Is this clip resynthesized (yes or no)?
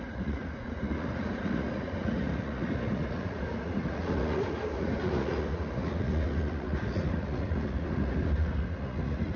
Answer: yes